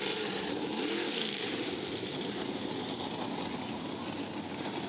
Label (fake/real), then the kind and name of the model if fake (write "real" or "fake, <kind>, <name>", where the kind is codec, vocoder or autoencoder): real